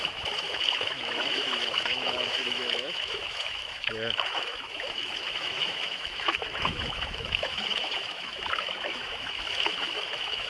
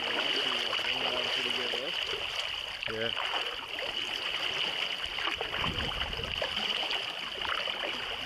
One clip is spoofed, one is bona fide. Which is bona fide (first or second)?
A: second